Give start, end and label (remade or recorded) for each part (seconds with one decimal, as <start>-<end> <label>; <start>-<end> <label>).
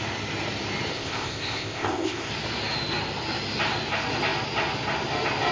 0.0-0.9 recorded; 0.9-2.3 remade; 2.3-5.5 recorded